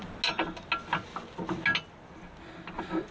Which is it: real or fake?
real